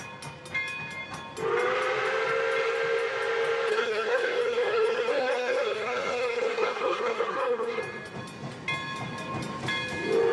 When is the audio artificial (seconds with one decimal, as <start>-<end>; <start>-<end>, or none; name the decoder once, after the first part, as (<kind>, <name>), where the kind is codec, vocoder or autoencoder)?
3.7-7.8 (codec, SNAC)